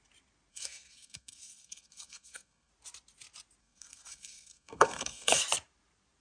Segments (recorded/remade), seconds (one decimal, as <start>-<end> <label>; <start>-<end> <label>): 0.0-0.5 recorded; 0.5-2.7 remade; 2.7-3.6 recorded; 3.6-5.4 remade; 5.4-6.2 recorded